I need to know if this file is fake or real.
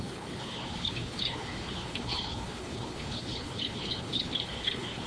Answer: fake